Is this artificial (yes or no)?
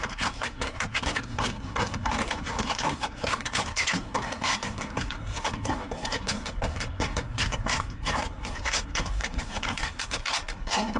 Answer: yes